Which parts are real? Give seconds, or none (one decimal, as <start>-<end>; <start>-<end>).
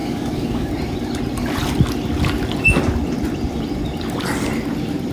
0.7-5.1